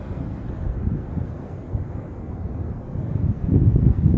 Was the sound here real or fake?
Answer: fake